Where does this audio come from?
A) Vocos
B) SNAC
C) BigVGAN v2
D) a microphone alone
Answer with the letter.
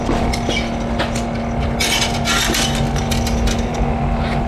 D